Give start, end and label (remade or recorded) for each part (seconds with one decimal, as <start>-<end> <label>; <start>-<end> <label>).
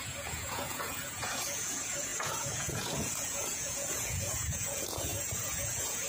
0.0-6.1 remade